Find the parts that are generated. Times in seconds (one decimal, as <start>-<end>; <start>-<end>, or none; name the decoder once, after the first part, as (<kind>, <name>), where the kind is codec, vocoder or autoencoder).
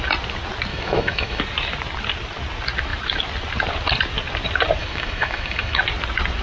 0.7-1.4 (autoencoder, DAC-VAE); 4.8-5.8